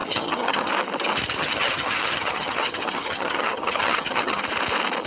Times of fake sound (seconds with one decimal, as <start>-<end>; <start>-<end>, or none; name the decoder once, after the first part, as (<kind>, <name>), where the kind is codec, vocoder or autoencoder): 0.0-0.7 (vocoder, HiFi-GAN); 1.4-4.4